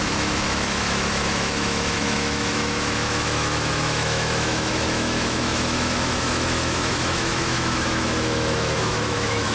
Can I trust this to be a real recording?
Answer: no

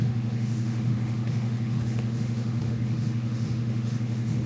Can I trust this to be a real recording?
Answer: no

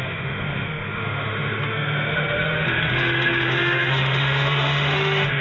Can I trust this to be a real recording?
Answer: no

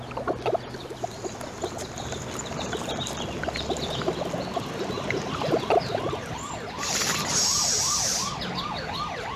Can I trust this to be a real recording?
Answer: yes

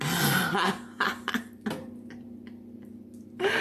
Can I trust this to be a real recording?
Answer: yes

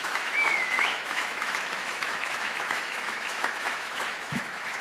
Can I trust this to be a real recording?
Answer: no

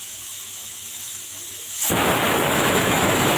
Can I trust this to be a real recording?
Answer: no